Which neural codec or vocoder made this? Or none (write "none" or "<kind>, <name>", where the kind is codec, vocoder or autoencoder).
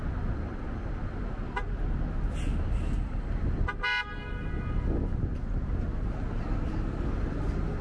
none